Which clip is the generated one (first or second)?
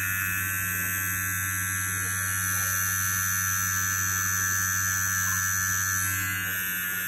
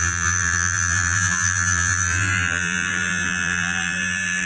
second